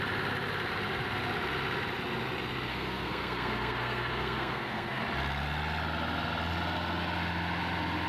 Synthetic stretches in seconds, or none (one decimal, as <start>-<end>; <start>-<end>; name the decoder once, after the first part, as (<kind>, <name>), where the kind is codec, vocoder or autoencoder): 2.7-5.0 (codec, SNAC)